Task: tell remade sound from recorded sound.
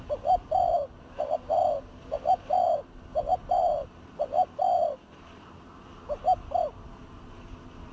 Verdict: remade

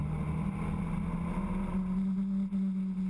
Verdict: recorded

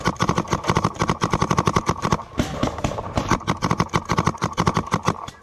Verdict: remade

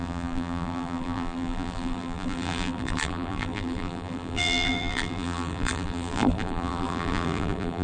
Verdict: remade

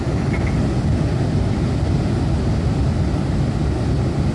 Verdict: recorded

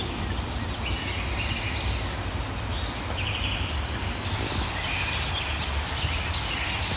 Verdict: recorded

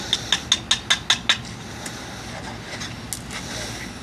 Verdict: recorded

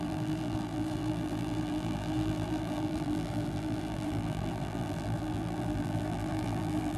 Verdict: remade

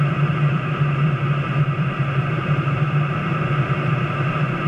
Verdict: remade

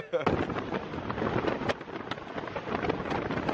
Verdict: recorded